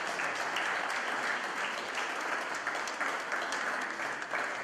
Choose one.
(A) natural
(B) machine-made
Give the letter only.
A